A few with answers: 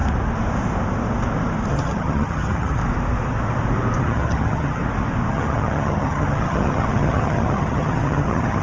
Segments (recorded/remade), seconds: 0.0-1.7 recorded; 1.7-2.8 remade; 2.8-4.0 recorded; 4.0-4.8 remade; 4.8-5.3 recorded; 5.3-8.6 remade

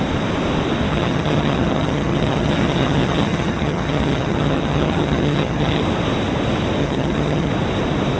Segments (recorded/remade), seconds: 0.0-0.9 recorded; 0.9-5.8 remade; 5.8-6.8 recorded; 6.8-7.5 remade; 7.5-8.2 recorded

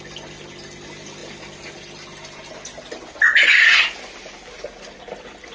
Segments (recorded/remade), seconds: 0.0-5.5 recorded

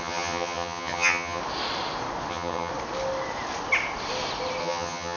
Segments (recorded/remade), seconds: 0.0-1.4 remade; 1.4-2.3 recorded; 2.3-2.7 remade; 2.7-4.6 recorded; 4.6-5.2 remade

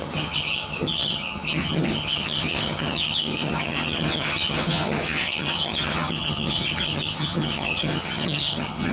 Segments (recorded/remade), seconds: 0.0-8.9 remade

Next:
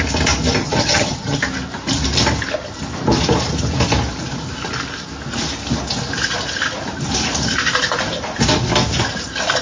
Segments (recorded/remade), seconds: 0.0-0.6 recorded; 0.6-1.4 remade; 1.4-9.6 recorded